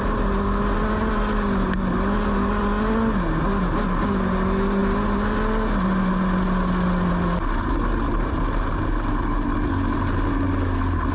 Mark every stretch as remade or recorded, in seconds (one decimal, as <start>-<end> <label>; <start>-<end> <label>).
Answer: 0.0-11.1 recorded